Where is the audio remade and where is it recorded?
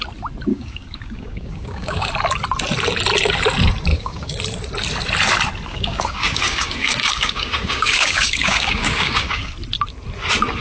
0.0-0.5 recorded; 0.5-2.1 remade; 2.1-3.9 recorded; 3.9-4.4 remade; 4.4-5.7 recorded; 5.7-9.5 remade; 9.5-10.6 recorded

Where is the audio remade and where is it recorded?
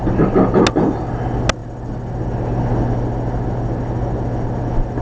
0.0-5.0 recorded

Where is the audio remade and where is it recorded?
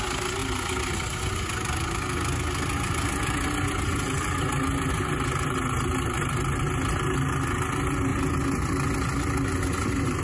0.0-10.2 recorded